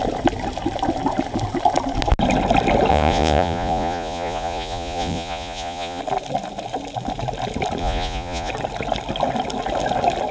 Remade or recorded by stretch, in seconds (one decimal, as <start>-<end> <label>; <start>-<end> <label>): 0.0-2.9 recorded; 2.9-6.0 remade; 6.0-7.8 recorded; 7.8-8.5 remade; 8.5-10.3 recorded